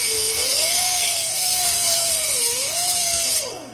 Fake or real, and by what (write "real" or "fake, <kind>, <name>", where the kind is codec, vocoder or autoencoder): fake, codec, SNAC